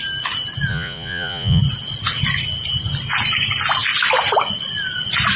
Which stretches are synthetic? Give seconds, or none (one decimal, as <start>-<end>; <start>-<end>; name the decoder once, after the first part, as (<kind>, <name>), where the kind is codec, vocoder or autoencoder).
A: 0.7-1.6 (vocoder, Vocos)